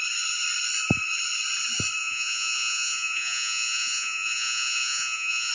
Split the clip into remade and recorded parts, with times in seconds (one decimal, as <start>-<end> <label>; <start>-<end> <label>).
0.0-2.0 recorded; 2.0-5.5 remade